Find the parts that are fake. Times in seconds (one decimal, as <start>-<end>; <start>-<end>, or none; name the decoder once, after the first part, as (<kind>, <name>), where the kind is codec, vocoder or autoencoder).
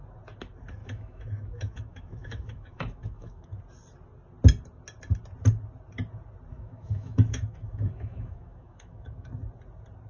0.8-3.6 (autoencoder, DAC-VAE); 6.5-9.3